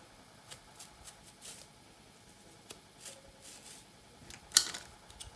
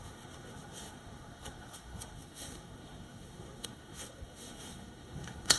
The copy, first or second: second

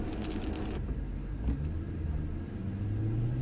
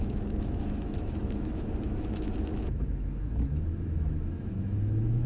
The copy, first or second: second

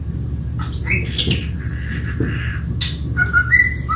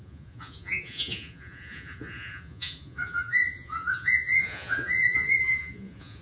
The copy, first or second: second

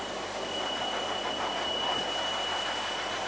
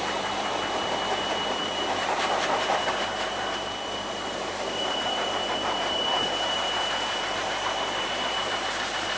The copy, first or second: second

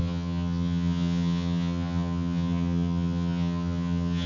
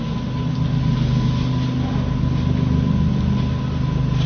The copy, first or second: first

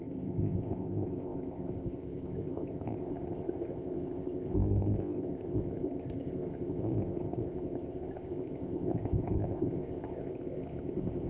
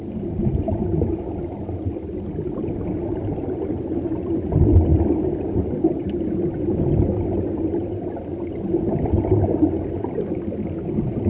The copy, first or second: first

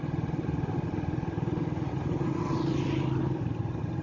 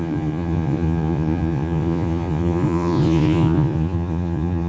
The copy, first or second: second